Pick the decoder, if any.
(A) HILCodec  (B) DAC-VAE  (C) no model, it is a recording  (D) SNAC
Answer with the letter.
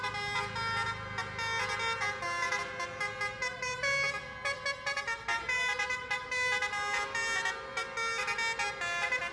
C